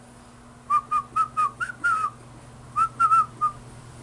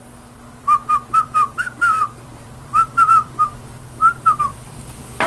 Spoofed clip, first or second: second